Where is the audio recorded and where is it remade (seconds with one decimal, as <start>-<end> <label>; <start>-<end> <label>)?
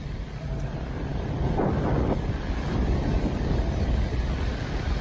0.0-5.0 recorded